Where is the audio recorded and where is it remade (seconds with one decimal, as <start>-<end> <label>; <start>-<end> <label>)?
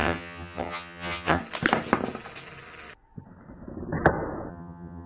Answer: 0.0-1.4 remade; 1.4-4.5 recorded; 4.5-5.1 remade